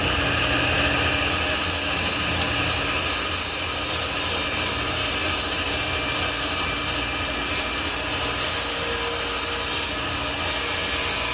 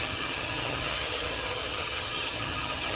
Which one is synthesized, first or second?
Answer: second